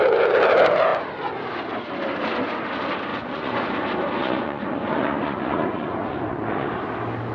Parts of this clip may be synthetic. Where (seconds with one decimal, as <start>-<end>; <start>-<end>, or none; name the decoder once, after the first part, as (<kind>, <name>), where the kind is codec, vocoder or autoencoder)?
3.1-3.7 (vocoder, Vocos); 4.2-6.7